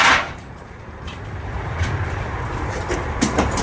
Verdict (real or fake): fake